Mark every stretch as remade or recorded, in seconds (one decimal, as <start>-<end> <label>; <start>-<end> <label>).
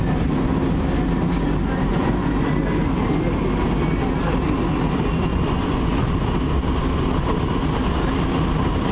0.0-1.9 recorded; 1.9-2.5 remade; 2.5-5.3 recorded; 5.3-6.1 remade; 6.1-8.9 recorded